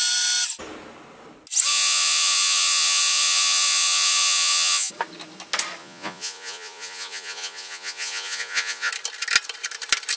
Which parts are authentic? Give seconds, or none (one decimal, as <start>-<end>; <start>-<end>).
0.0-1.7; 4.9-5.8; 8.9-10.2